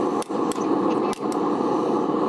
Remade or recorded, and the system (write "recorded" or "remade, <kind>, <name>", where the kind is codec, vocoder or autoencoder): recorded